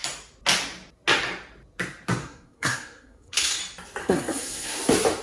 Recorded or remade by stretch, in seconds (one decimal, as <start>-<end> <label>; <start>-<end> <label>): 0.0-2.2 recorded; 2.2-3.6 remade; 3.6-4.0 recorded; 4.0-4.8 remade; 4.8-5.2 recorded